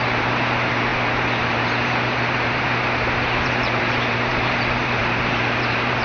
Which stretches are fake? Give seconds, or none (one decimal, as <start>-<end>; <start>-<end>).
0.0-6.0